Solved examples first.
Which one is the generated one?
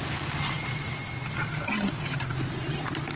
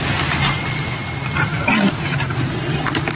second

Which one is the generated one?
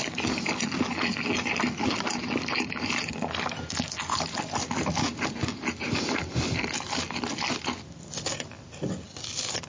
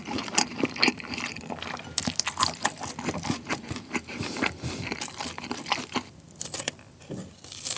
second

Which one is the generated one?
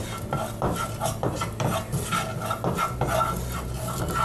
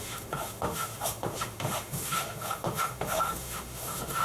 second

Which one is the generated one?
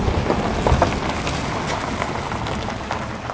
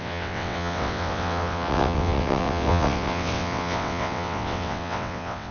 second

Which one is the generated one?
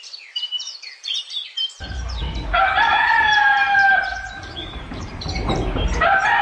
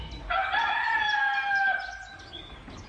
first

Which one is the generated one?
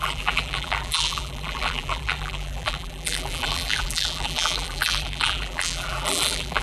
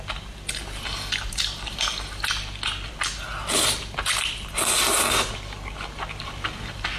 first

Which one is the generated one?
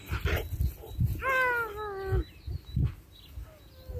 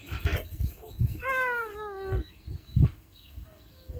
second